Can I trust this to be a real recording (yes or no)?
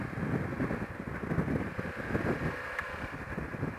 yes